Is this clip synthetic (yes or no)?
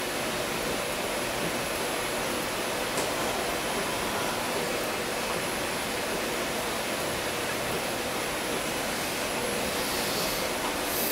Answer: no